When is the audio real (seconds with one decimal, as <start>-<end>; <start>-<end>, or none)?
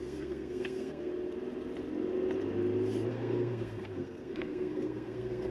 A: 1.1-3.1